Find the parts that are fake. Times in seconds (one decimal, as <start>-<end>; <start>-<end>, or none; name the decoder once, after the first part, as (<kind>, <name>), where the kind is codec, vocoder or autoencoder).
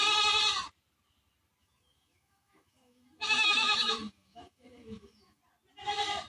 1.6-5.4 (autoencoder, DAC-VAE)